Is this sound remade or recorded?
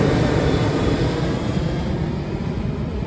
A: recorded